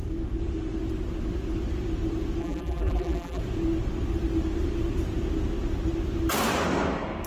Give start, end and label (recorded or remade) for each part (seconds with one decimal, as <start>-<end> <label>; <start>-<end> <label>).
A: 0.0-2.4 recorded; 2.4-3.4 remade; 3.4-7.3 recorded